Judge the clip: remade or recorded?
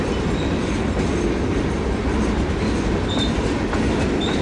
recorded